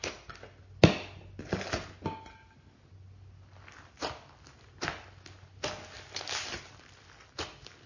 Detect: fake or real real